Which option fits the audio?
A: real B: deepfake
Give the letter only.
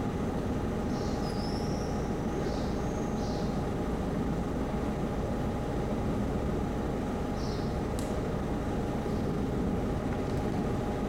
A